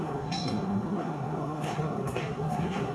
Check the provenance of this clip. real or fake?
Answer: fake